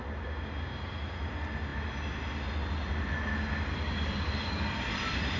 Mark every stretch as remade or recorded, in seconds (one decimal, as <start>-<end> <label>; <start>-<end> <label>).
0.0-5.4 recorded